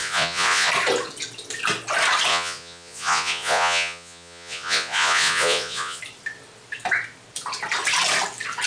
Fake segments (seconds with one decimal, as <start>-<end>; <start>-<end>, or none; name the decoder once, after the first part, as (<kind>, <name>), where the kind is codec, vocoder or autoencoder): 0.0-0.7 (vocoder, Vocos); 2.3-6.0